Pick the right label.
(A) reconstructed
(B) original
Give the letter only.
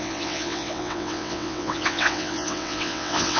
A